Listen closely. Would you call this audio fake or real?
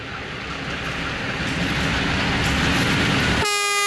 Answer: real